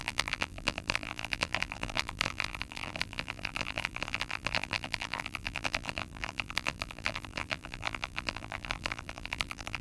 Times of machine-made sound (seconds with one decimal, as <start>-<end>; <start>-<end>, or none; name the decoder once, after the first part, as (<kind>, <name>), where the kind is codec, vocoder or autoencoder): 0.0-9.8 (vocoder, BigVGAN v2)